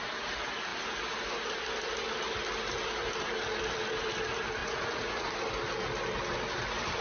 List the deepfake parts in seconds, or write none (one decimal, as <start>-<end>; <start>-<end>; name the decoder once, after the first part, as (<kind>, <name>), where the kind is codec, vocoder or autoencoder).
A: 4.6-5.3 (vocoder, Vocos)